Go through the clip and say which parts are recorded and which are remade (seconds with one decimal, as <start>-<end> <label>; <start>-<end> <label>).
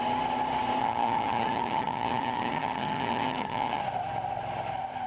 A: 0.0-0.8 recorded; 0.8-3.8 remade; 3.8-5.1 recorded